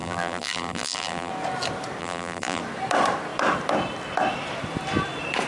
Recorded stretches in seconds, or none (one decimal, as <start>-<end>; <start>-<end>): 1.3-2.0; 2.6-5.5